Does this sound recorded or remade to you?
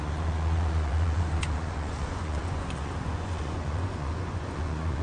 remade